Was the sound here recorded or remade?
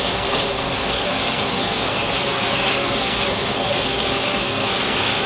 remade